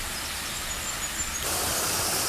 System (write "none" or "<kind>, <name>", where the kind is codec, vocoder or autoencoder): none